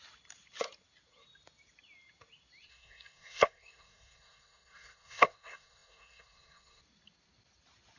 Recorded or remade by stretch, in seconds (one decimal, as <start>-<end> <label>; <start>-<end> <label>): 0.0-2.7 recorded; 2.7-6.8 remade; 6.8-8.0 recorded